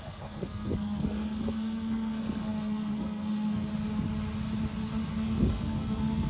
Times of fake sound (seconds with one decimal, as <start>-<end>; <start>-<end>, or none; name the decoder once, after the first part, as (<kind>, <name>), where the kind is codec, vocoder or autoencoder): 0.0-3.7 (codec, SNAC); 5.1-6.3